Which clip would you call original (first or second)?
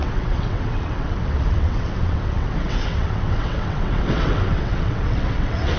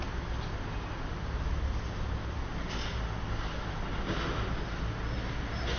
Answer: second